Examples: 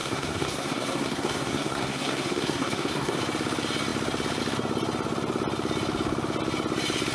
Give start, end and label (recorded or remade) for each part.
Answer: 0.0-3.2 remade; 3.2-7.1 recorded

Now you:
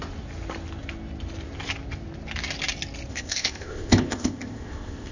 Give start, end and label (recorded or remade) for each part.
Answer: 0.0-3.1 recorded; 3.1-5.1 remade

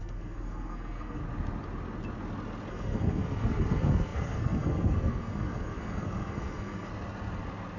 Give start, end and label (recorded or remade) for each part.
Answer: 0.0-1.2 remade; 1.2-2.7 recorded; 2.7-6.9 remade; 6.9-7.8 recorded